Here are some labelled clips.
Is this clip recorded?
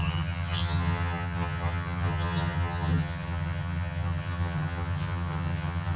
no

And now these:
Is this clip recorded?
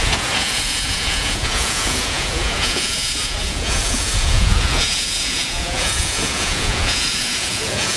no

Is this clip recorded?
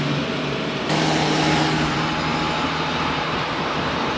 no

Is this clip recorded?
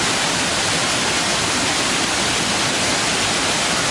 yes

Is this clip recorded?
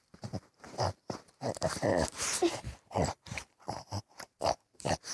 no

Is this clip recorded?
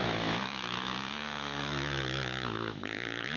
no